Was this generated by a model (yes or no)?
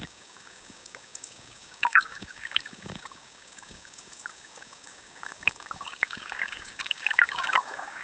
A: yes